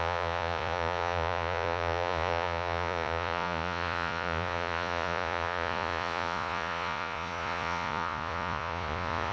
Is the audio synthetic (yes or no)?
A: yes